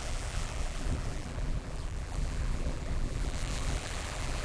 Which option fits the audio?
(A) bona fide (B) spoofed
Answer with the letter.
B